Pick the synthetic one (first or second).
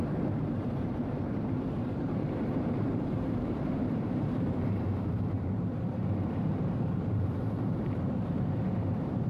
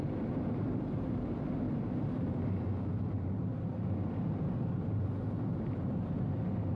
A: first